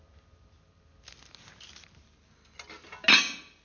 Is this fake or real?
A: real